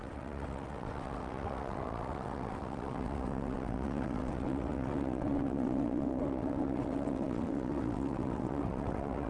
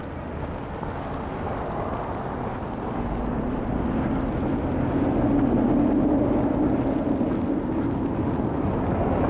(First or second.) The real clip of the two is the second